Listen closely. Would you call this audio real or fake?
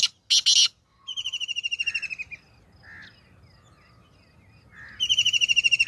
real